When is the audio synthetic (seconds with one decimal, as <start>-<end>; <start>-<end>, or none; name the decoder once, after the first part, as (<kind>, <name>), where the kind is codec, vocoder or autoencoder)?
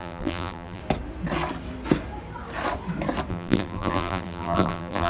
0.0-0.8 (vocoder, BigVGAN v2); 3.3-5.1